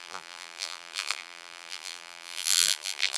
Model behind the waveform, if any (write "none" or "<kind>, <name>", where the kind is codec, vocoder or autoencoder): vocoder, BigVGAN v2